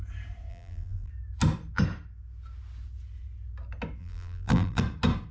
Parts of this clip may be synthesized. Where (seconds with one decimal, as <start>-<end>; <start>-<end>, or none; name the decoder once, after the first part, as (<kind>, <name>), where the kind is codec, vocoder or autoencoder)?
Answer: 0.5-1.1 (vocoder, BigVGAN v2); 4.0-4.8